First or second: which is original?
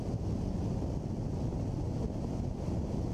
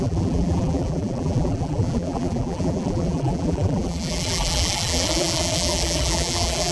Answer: first